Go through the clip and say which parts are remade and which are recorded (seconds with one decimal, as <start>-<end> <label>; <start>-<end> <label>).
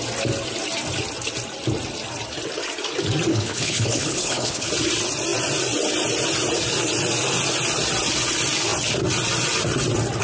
0.0-3.3 recorded; 3.3-4.7 remade; 4.7-10.2 recorded